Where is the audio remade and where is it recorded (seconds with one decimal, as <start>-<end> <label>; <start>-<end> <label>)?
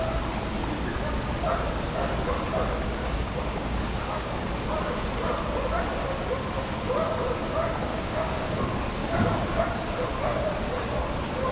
0.0-2.8 recorded; 2.8-4.6 remade; 4.6-7.9 recorded; 7.9-8.6 remade; 8.6-9.0 recorded; 9.0-9.6 remade; 9.6-11.5 recorded